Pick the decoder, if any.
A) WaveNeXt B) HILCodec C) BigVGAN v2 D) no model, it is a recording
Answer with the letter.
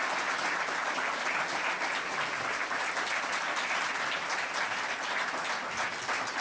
D